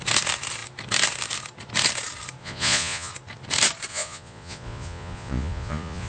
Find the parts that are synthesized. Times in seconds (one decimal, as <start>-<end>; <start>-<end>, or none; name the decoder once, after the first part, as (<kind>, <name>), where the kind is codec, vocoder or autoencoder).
2.4-3.1 (vocoder, Vocos); 3.9-6.1